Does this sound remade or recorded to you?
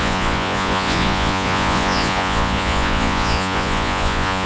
remade